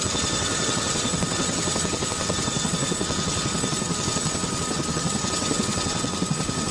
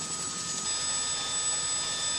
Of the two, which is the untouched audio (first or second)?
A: second